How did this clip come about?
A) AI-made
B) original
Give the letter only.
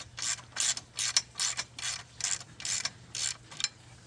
B